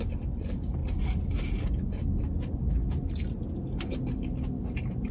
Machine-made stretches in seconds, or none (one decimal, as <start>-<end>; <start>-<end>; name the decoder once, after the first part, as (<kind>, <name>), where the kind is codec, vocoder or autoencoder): none